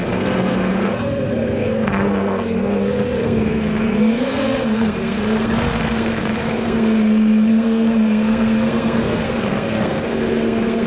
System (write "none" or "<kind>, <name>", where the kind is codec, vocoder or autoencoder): codec, SNAC